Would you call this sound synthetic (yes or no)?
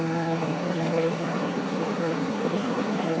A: yes